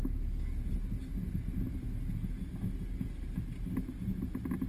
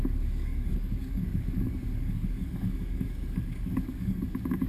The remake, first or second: second